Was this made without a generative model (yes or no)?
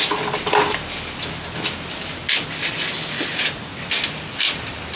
yes